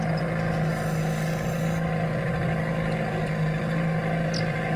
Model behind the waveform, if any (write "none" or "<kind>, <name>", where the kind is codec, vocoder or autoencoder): none